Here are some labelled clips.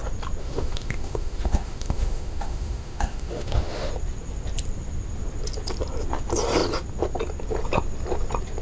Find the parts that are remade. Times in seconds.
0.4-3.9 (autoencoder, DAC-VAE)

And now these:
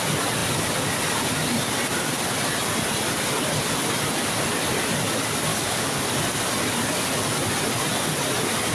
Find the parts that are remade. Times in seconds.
5.5-6.0 (codec, DAC)

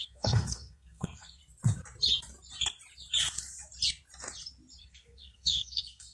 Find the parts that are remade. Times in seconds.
0.0-1.4 (codec, SNAC); 4.8-6.1

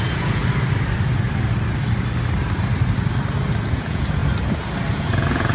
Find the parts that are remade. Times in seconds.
0.0-0.4 (vocoder, Vocos); 3.7-4.2; 4.9-5.5

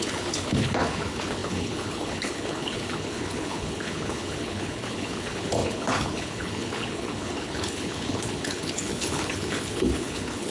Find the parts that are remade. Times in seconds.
0.0-10.5 (codec, HILCodec)